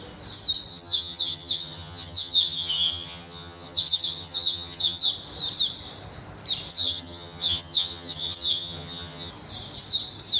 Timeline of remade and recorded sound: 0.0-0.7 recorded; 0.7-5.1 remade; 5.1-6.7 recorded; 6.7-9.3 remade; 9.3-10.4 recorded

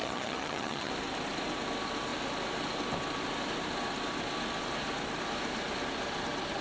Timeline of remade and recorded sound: 0.0-0.9 remade; 0.9-6.6 recorded

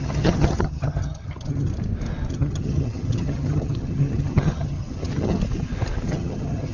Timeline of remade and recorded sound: 0.0-1.7 remade; 1.7-2.3 recorded; 2.3-5.4 remade; 5.4-6.1 recorded; 6.1-6.7 remade